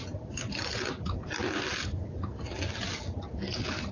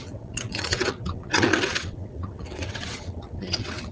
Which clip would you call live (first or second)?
first